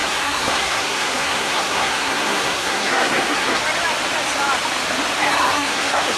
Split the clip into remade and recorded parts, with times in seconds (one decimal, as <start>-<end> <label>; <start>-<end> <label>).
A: 0.0-3.6 remade; 3.6-5.3 recorded; 5.3-6.2 remade